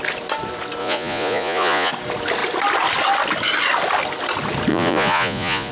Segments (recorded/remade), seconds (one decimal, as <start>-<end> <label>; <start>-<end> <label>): 0.0-0.8 recorded; 0.8-1.9 remade; 1.9-4.7 recorded; 4.7-5.7 remade